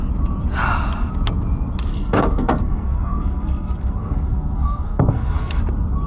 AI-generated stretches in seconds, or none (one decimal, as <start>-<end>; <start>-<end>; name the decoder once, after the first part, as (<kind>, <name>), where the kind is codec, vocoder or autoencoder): 1.9-5.6 (codec, SNAC)